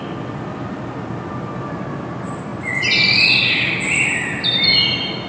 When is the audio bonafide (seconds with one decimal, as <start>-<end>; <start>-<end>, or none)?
0.0-5.3